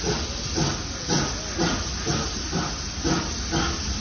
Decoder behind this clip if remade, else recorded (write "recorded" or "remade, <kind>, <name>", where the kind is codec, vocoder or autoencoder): recorded